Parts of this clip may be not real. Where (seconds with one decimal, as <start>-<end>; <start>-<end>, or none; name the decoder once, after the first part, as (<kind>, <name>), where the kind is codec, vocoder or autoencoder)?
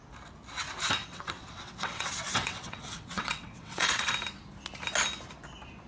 1.0-4.1 (vocoder, WaveNeXt)